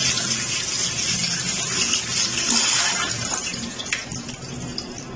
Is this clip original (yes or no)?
yes